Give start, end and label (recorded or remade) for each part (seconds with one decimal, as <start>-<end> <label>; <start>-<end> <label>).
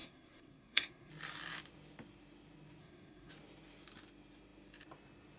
0.0-1.1 remade; 1.1-2.8 recorded; 2.8-3.3 remade; 3.3-5.4 recorded